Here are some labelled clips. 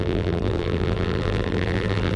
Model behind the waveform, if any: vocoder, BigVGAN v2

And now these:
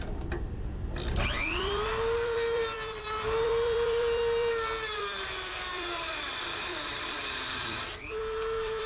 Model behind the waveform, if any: vocoder, BigVGAN v2